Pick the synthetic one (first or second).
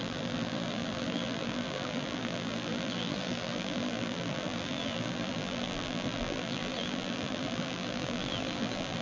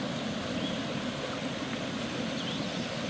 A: first